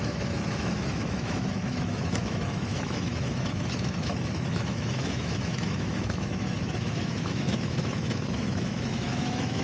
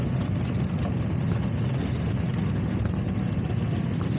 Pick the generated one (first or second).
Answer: first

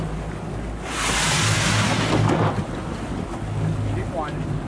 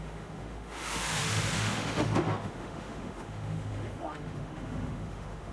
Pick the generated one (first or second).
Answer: second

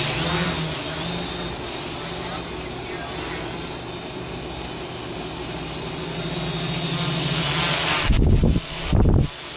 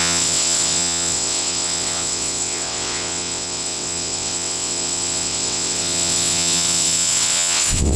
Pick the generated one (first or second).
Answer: second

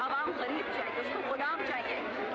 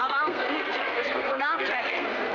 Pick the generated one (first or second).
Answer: second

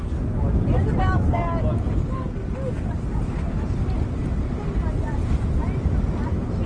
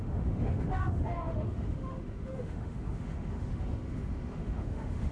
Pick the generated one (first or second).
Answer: second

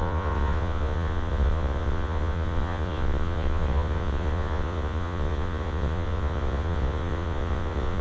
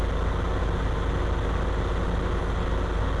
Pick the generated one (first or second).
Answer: first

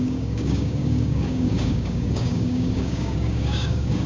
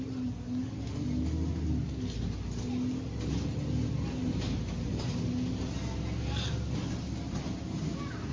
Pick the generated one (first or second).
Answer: first